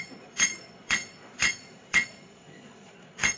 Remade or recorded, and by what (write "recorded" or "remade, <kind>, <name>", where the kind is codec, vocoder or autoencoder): remade, vocoder, Vocos